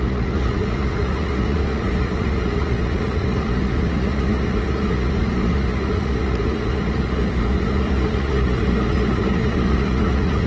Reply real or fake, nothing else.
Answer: fake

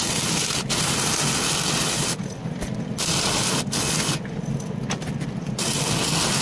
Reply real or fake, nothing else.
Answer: real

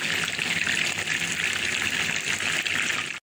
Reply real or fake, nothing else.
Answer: real